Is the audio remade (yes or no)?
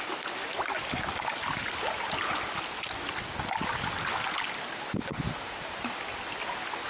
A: no